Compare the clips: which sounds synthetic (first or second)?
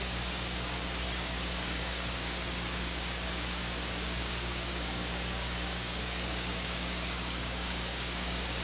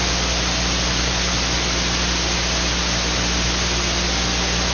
first